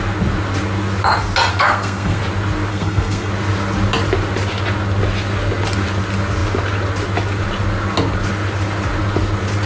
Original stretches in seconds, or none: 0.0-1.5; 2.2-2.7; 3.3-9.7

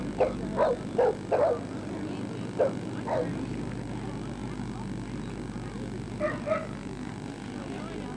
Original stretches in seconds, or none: 0.0-6.6; 7.1-8.2